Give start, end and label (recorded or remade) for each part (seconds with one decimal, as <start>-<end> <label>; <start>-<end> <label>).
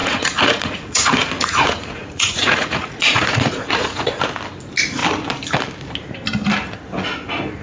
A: 0.0-4.2 remade; 4.2-7.6 recorded